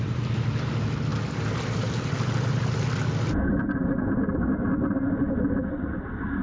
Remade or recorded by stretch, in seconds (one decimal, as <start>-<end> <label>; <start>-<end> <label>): 0.0-6.4 recorded

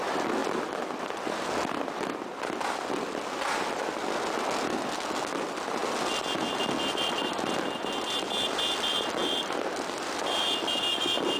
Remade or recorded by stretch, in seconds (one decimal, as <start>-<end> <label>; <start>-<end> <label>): 0.0-11.4 recorded

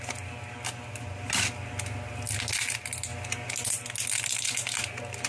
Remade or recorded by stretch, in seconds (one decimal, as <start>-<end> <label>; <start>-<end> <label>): 0.0-5.3 recorded

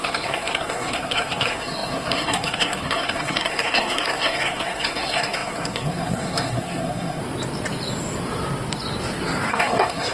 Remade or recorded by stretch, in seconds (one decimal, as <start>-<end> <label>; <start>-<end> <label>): 0.0-7.2 remade; 7.2-9.5 recorded; 9.5-10.1 remade